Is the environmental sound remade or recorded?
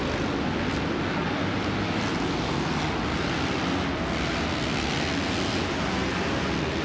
recorded